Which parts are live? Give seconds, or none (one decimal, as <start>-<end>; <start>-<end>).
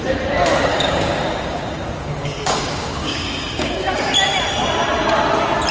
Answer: 0.0-0.7; 4.1-5.7